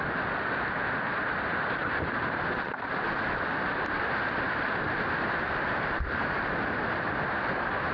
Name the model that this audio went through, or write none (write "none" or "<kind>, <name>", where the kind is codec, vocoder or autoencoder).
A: none